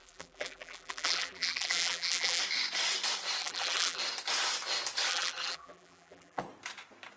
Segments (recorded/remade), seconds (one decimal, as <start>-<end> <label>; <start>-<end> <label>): 0.0-2.4 remade; 2.4-3.4 recorded; 3.4-4.0 remade; 4.0-5.1 recorded; 5.1-6.4 remade; 6.4-7.2 recorded